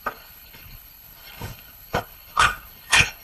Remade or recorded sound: remade